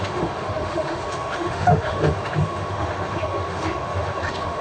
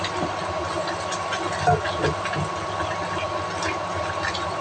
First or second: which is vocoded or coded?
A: first